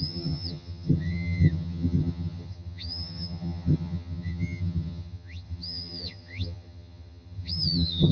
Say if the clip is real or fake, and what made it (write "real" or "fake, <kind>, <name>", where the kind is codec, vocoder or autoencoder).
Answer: fake, vocoder, HiFi-GAN